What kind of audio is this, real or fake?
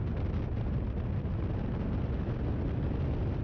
real